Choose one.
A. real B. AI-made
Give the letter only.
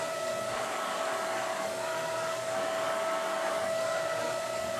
B